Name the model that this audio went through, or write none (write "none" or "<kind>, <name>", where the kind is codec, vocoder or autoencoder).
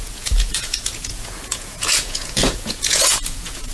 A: vocoder, Vocos